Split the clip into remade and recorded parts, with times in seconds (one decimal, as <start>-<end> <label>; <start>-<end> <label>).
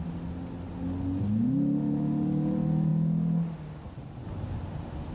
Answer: 0.0-5.1 recorded